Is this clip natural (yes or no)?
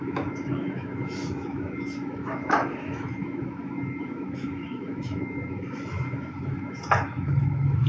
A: no